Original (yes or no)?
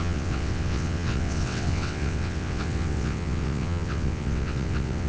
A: no